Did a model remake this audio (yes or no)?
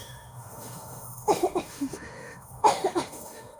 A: yes